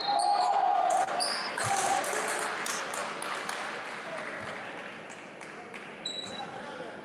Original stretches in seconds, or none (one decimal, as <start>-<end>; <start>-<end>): 0.0-7.0